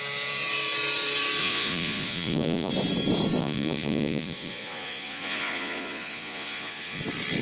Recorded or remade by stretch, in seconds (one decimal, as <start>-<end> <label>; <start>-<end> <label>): 0.0-1.4 recorded; 1.4-2.7 remade; 2.7-3.4 recorded; 3.4-7.0 remade; 7.0-7.4 recorded